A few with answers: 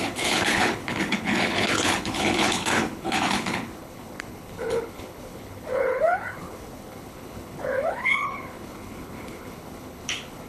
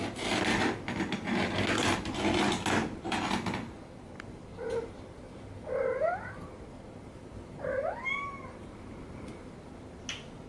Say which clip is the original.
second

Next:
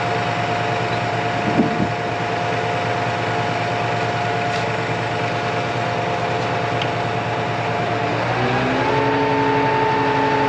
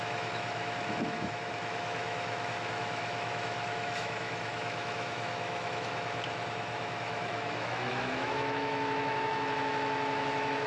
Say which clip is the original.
first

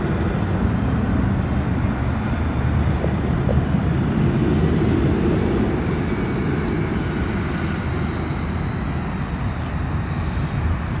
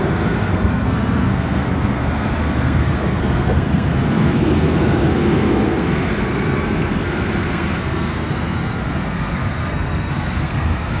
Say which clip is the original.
first